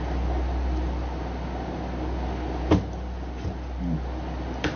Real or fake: real